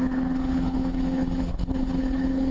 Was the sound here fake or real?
fake